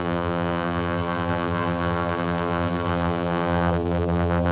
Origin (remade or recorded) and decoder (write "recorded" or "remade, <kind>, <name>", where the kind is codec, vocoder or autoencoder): remade, vocoder, BigVGAN v2